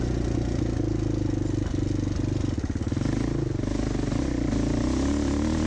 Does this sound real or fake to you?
real